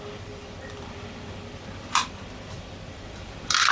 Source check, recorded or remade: remade